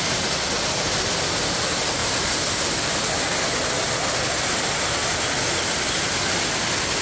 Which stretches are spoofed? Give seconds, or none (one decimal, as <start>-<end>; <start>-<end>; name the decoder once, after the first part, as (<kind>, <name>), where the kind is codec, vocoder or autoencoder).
none